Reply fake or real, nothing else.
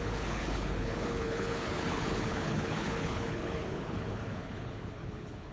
fake